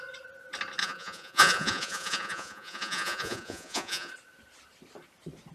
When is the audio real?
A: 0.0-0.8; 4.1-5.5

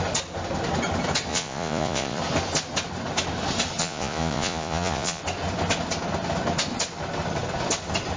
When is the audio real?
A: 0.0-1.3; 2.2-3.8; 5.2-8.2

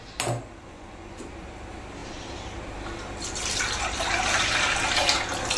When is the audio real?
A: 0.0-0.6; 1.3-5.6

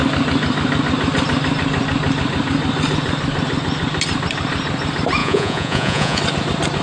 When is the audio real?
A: 0.0-5.2; 6.2-6.8

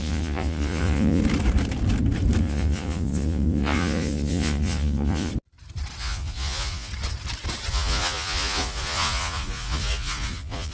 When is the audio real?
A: 1.2-2.4; 5.3-6.0; 6.9-7.7